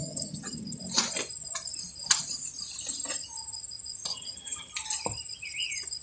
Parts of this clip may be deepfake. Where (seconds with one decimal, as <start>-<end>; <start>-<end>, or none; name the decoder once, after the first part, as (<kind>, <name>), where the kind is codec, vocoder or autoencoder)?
0.0-0.8 (vocoder, HiFi-GAN); 4.1-4.7